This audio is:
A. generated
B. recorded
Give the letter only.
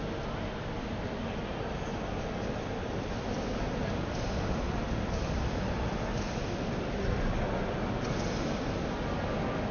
B